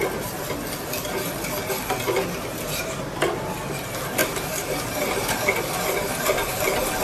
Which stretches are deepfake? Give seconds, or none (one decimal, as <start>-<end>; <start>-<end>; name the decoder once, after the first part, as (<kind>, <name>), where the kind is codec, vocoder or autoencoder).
4.2-6.6 (vocoder, BigVGAN v2)